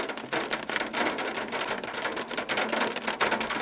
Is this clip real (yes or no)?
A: yes